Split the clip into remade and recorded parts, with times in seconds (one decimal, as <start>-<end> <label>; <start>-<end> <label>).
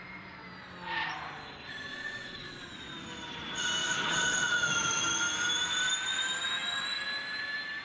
0.0-1.9 recorded; 1.9-2.9 remade; 2.9-3.8 recorded; 3.8-4.7 remade; 4.7-7.8 recorded